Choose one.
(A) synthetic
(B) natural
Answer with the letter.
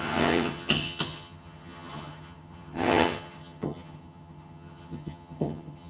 A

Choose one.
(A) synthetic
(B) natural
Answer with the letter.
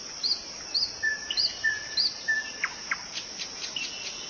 B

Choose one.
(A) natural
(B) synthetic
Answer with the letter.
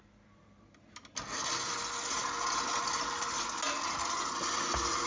A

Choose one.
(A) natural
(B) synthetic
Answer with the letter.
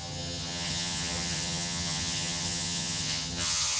B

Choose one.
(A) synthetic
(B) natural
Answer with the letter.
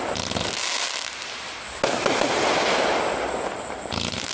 B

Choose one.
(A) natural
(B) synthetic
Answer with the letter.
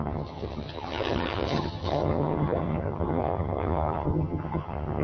B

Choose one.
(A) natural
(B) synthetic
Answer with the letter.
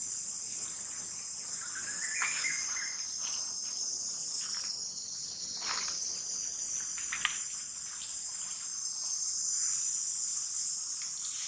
A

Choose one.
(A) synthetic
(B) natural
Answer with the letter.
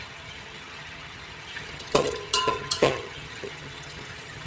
A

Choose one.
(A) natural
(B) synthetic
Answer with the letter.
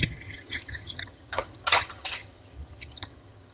B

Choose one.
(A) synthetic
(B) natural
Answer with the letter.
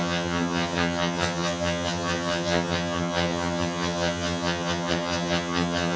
A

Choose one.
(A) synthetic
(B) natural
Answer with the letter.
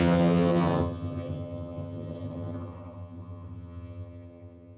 A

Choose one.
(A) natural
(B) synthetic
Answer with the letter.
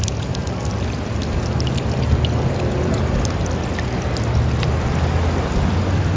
A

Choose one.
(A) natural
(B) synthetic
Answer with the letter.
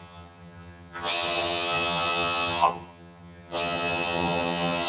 B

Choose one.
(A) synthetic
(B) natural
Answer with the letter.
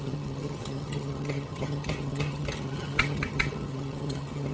A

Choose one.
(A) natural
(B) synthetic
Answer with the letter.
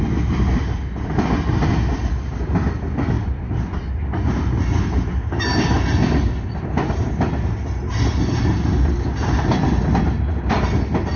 A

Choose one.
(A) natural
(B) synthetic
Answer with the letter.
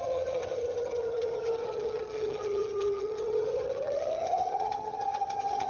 B